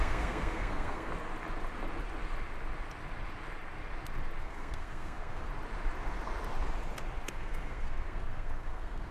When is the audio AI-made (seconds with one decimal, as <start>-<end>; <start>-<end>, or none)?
0.0-1.1; 4.4-5.5; 7.3-9.1

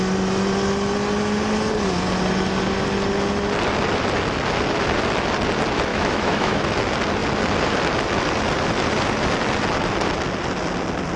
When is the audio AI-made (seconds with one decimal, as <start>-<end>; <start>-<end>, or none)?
5.9-6.7

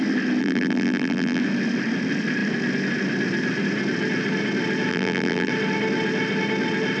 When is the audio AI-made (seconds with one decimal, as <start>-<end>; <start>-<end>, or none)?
0.4-1.4; 4.9-5.5

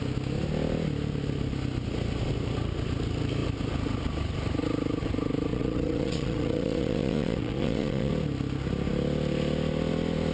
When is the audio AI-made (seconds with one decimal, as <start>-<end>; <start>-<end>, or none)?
5.5-8.1

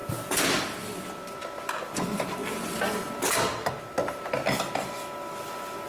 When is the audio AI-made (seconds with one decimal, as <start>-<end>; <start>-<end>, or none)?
0.8-2.4

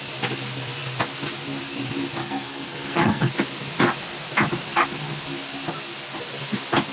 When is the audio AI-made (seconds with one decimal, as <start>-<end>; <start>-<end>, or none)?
2.2-3.3